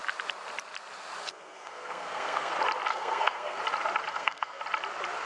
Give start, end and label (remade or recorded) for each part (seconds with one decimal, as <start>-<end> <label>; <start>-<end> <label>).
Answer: 0.0-1.2 recorded; 1.2-2.5 remade; 2.5-2.9 recorded; 2.9-3.6 remade; 3.6-4.1 recorded; 4.1-4.6 remade; 4.6-5.3 recorded